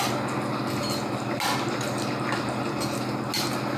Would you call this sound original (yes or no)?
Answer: yes